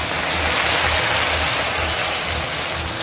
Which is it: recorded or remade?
recorded